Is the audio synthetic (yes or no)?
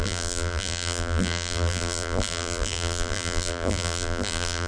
yes